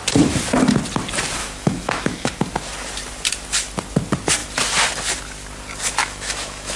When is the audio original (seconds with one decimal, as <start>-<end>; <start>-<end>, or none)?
0.0-1.4; 2.3-6.0